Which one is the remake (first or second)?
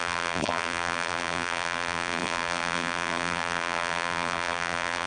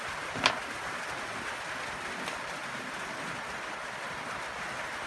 first